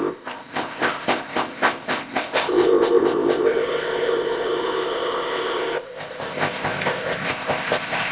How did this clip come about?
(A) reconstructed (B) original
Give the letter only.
A